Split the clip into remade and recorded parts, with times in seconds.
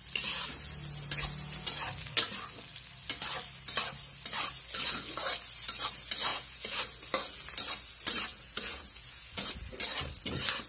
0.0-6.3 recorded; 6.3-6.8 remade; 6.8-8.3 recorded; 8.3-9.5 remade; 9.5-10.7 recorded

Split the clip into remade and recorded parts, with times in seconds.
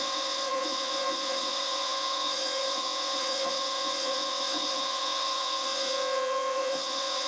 0.0-7.3 remade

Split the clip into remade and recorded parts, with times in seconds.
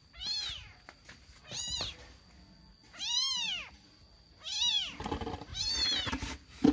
0.0-6.7 recorded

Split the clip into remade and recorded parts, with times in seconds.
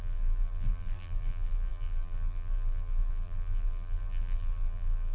0.0-5.1 remade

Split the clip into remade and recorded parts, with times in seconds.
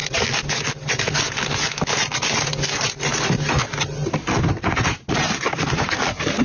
0.0-6.4 recorded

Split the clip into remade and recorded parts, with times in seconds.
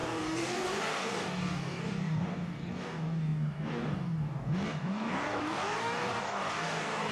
0.0-7.1 remade